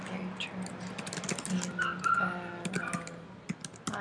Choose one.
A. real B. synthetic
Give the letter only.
A